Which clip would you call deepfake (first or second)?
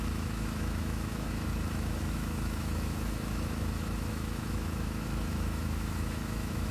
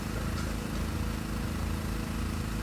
first